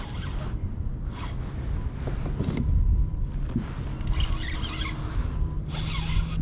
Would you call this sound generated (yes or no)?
no